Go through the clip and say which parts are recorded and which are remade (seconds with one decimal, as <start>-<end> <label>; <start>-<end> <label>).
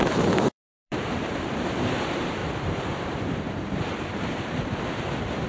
0.0-2.4 remade; 2.4-5.5 recorded